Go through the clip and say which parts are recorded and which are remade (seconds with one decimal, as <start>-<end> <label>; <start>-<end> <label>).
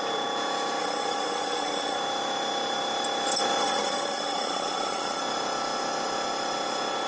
0.0-0.8 recorded; 0.8-2.0 remade; 2.0-3.6 recorded; 3.6-5.2 remade; 5.2-7.1 recorded